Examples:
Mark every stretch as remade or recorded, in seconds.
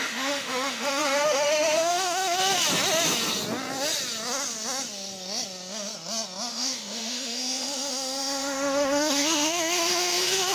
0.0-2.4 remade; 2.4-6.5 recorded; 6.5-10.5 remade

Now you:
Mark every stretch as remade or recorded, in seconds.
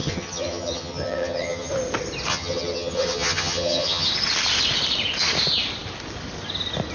0.0-1.7 remade; 1.7-2.3 recorded; 2.3-4.1 remade; 4.1-6.9 recorded